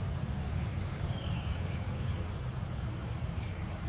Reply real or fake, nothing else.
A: fake